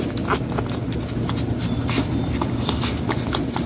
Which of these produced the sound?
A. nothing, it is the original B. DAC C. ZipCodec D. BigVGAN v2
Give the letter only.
A